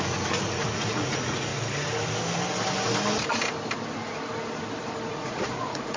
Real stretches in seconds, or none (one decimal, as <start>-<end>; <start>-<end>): 1.5-5.1